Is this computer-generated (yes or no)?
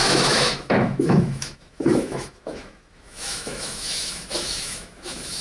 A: yes